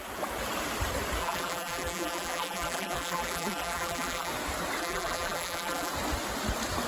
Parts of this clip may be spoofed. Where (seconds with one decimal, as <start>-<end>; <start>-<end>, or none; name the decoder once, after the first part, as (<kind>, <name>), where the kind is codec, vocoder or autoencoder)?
1.2-4.3 (vocoder, BigVGAN v2); 4.8-5.9